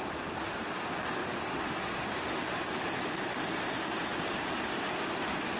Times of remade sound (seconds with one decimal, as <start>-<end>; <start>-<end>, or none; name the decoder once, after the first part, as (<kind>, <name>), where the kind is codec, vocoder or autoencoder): none